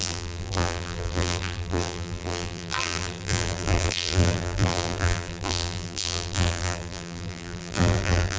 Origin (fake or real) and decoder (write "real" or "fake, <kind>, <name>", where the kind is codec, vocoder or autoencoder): fake, vocoder, BigVGAN v2